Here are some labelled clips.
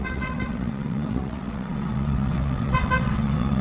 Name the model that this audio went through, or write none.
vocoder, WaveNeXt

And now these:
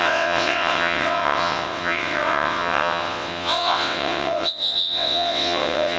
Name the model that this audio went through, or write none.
vocoder, WaveNeXt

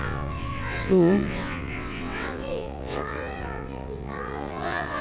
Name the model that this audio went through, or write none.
vocoder, WaveNeXt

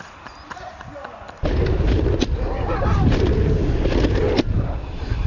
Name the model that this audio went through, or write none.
none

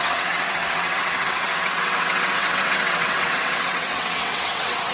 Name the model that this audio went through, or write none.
vocoder, WaveNeXt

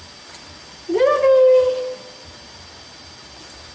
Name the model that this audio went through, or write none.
none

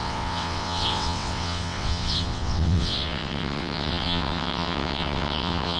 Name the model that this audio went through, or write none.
vocoder, WaveNeXt